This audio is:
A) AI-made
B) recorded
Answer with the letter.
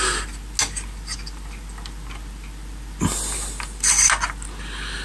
B